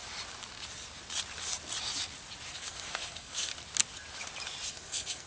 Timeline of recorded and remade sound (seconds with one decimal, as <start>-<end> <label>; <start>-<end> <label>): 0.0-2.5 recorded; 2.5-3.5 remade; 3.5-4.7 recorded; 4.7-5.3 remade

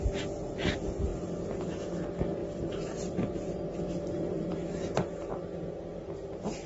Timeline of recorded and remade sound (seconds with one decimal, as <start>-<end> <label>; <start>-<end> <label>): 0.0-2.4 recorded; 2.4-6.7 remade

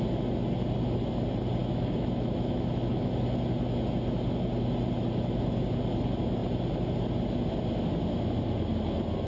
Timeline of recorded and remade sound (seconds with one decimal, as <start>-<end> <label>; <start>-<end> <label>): 0.0-1.6 recorded; 1.6-3.1 remade; 3.1-9.3 recorded